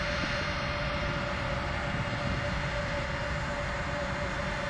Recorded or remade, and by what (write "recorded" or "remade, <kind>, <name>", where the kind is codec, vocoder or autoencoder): recorded